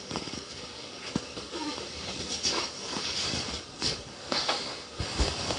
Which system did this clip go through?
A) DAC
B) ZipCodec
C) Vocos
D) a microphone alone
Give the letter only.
A